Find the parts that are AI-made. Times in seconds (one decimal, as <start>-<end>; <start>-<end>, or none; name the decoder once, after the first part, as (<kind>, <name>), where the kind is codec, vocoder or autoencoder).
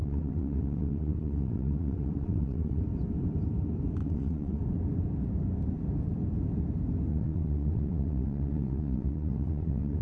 0.0-2.8 (vocoder, WaveNeXt); 4.0-4.6; 7.1-10.0